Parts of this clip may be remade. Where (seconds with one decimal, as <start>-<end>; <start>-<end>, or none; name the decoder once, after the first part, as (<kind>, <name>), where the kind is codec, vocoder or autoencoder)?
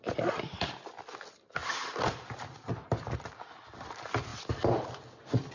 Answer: none